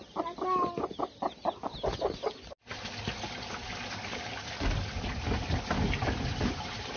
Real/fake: real